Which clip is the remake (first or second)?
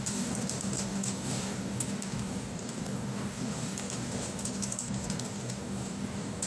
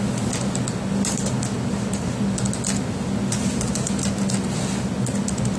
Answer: first